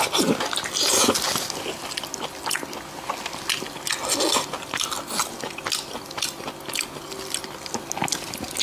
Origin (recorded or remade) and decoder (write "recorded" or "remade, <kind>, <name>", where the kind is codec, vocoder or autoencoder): recorded